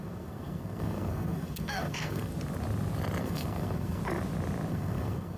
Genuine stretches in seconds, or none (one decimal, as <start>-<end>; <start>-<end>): 2.3-3.2; 4.0-4.7